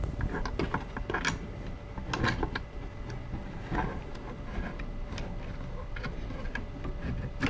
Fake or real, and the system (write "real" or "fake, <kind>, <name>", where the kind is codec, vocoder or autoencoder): real